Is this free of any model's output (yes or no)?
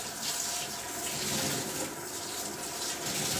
yes